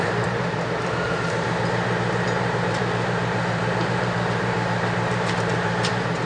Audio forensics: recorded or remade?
remade